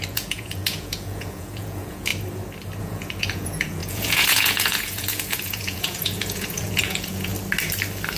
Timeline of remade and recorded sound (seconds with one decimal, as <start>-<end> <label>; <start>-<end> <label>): 0.0-2.1 remade; 2.1-2.8 recorded; 2.8-7.3 remade; 7.3-8.2 recorded